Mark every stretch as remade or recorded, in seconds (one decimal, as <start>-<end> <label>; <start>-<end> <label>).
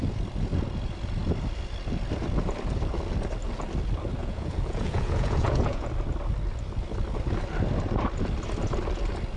0.0-4.2 recorded; 4.2-5.9 remade; 5.9-9.4 recorded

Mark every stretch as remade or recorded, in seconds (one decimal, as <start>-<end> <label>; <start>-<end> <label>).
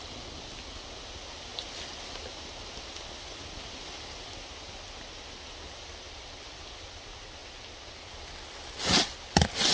0.0-9.7 recorded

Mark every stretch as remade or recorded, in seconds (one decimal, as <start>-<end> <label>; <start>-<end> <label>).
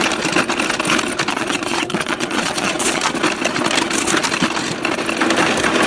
0.0-1.3 recorded; 1.3-3.1 remade; 3.1-5.9 recorded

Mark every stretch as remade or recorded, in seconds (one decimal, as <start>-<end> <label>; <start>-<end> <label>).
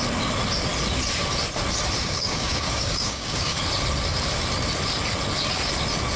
0.0-2.0 recorded; 2.0-3.6 remade; 3.6-6.2 recorded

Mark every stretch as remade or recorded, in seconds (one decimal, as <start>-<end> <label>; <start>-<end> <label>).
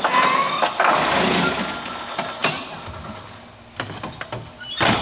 0.0-5.0 recorded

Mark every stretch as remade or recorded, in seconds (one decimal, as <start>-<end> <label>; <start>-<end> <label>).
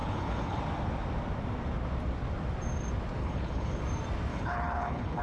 0.0-0.6 remade; 0.6-3.2 recorded; 3.2-3.8 remade; 3.8-4.3 recorded; 4.3-5.2 remade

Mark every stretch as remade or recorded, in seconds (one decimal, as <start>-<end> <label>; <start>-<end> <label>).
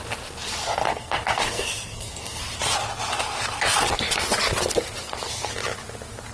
0.0-0.9 recorded; 0.9-2.4 remade; 2.4-5.0 recorded; 5.0-5.5 remade; 5.5-6.3 recorded